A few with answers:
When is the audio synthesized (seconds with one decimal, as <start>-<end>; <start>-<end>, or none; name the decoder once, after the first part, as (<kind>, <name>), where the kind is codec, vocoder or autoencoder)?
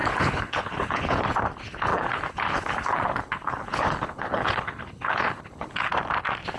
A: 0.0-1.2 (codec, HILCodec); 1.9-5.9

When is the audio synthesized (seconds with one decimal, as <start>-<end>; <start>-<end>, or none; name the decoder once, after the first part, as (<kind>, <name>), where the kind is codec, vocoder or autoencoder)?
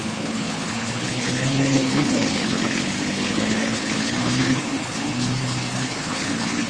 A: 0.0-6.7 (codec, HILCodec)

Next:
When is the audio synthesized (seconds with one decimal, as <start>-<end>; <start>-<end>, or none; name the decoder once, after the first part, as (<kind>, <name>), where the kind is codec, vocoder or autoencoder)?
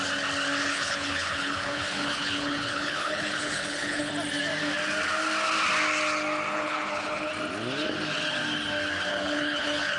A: 0.6-4.1 (codec, HILCodec); 6.5-7.3; 9.1-10.0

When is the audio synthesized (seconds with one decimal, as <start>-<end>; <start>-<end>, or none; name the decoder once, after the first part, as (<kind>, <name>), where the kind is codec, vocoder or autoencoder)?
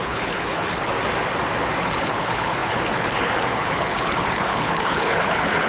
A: 0.0-0.9 (codec, HILCodec); 1.8-5.7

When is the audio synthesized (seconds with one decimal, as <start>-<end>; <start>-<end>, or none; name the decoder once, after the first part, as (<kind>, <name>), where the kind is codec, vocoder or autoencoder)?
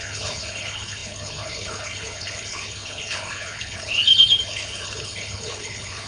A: 0.0-6.1 (codec, HILCodec)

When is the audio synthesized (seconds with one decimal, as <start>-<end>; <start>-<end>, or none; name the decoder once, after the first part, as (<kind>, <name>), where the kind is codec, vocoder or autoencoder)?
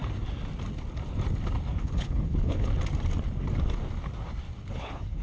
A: 1.8-2.7 (codec, HILCodec); 4.7-5.2